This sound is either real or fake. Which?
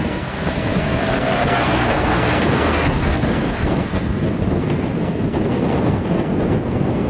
fake